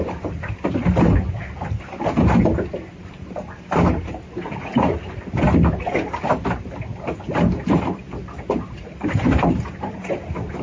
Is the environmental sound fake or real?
real